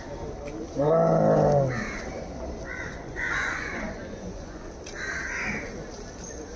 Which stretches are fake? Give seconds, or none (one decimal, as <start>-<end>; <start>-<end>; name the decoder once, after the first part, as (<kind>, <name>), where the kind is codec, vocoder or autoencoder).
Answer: 2.7-4.7 (vocoder, Vocos)